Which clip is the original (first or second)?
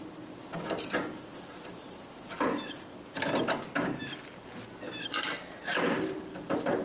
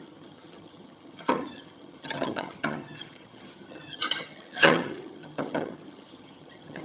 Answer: first